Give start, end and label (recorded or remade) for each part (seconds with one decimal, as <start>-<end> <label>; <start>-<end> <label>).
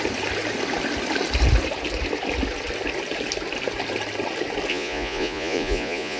0.0-4.7 recorded; 4.7-6.2 remade